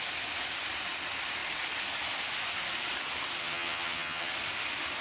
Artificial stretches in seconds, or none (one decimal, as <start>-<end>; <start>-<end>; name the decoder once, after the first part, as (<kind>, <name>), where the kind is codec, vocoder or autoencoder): 3.4-4.3 (vocoder, HiFi-GAN)

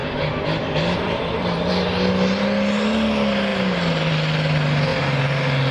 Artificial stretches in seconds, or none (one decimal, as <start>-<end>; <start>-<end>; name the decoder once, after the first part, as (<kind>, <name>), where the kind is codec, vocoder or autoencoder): 0.0-1.7 (vocoder, BigVGAN v2)